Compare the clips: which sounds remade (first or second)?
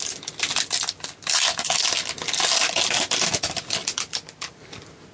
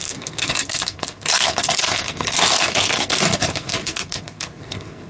second